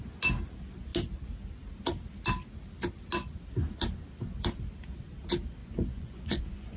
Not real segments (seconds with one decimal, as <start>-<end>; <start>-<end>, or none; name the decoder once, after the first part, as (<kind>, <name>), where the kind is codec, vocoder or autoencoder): 5.6-6.8 (vocoder, Vocos)